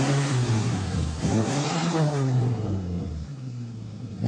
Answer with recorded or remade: remade